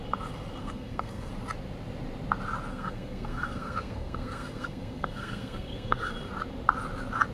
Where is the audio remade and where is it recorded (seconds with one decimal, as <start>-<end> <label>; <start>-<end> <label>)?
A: 0.0-0.6 recorded; 0.6-1.3 remade; 1.3-2.7 recorded; 2.7-6.1 remade; 6.1-7.3 recorded